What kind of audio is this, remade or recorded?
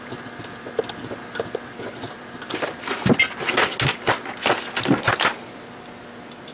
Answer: recorded